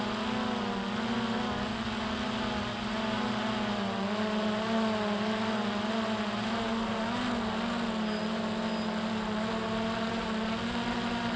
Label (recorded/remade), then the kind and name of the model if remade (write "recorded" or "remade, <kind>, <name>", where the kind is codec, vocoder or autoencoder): recorded